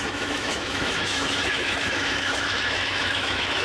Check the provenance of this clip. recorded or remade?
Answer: remade